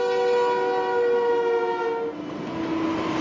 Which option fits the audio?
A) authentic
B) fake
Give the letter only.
A